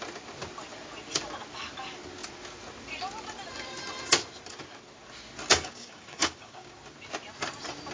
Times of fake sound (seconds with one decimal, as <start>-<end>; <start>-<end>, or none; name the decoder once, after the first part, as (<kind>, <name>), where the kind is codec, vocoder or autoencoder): 5.5-6.7 (codec, DAC)